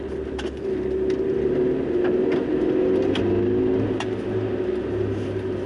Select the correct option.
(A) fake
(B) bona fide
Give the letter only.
B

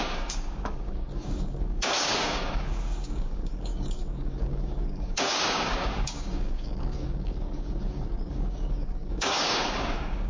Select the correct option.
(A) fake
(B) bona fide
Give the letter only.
A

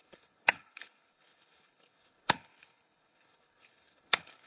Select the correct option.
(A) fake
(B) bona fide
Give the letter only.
A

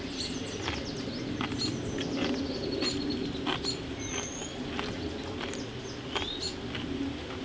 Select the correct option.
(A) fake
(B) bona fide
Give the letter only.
B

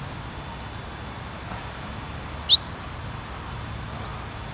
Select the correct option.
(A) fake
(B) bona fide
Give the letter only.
B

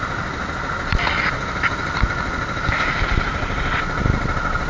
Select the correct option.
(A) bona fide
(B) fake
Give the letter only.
A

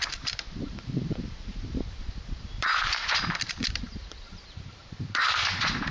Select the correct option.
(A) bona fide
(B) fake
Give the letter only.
B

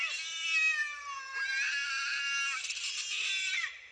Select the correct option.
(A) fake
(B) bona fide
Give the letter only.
B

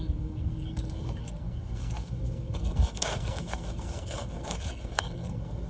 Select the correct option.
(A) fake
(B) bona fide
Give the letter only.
A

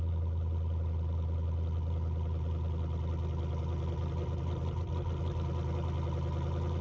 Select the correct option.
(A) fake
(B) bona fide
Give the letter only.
B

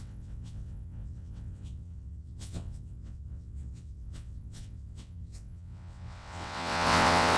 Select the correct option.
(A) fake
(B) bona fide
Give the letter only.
A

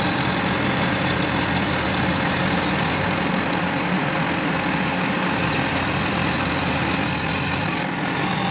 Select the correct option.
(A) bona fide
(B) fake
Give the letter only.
A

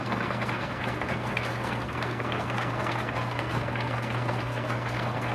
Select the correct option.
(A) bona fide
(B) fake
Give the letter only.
B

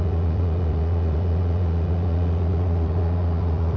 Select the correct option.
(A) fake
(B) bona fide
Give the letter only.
A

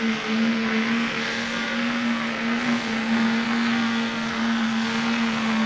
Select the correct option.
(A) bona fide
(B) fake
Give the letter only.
B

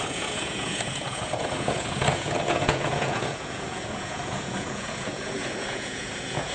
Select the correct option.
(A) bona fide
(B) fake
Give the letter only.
B